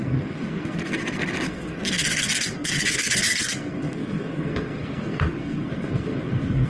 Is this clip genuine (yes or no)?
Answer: no